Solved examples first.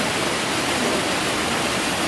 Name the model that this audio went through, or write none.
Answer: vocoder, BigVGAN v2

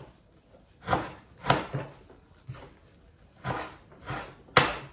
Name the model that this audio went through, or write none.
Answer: none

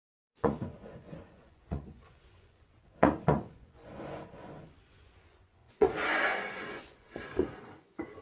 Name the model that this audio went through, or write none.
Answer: vocoder, Vocos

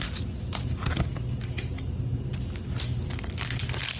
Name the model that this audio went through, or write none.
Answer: none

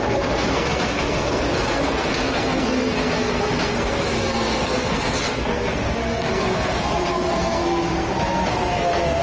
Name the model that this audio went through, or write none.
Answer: codec, SNAC